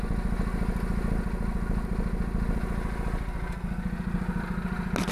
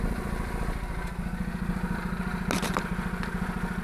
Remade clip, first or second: second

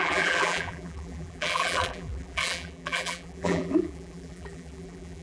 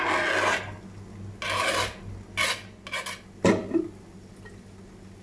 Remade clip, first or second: first